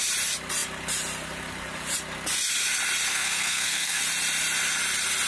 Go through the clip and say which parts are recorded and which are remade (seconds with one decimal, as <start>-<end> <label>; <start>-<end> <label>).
0.0-3.1 recorded; 3.1-4.0 remade; 4.0-5.3 recorded